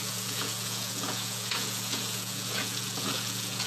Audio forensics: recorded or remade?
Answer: remade